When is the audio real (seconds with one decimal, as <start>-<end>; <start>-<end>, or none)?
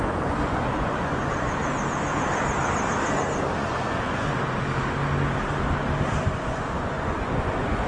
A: 1.6-3.5; 4.3-6.3